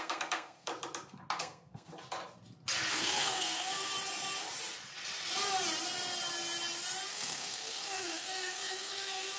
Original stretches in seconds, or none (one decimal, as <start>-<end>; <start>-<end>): 0.7-1.4; 1.9-2.9; 3.9-7.1